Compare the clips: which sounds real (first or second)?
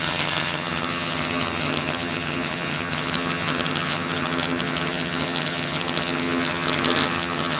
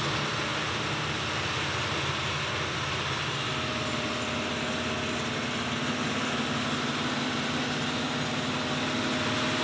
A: second